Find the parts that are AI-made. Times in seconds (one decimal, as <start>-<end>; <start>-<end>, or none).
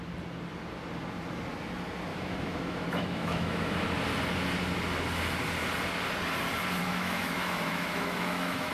2.1-3.7; 6.8-8.7